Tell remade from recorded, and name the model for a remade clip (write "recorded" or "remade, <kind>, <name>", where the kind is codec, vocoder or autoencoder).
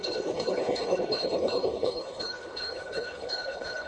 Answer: remade, codec, HILCodec